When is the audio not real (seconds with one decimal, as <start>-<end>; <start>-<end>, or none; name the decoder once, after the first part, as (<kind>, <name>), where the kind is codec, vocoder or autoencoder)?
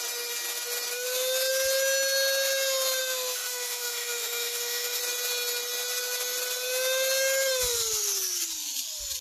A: 3.0-5.0 (autoencoder, DAC-VAE)